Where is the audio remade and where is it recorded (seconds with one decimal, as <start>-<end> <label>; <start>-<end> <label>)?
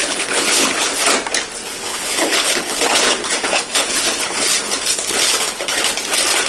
0.0-0.8 remade; 0.8-1.9 recorded; 1.9-5.8 remade; 5.8-6.5 recorded